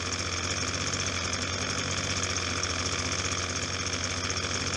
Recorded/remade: recorded